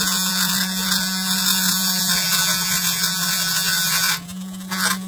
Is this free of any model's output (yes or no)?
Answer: no